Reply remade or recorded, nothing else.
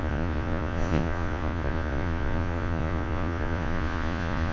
remade